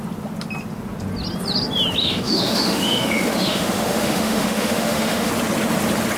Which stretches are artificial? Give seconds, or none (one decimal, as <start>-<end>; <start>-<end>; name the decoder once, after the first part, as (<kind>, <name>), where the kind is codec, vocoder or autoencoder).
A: 2.0-5.3 (autoencoder, DAC-VAE)